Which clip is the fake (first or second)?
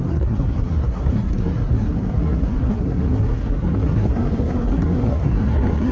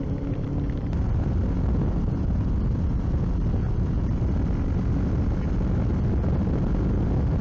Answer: first